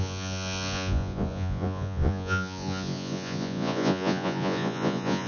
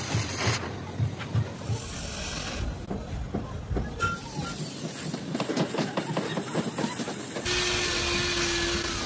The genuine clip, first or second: second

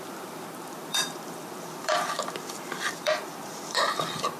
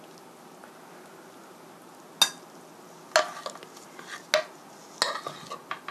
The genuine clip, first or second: second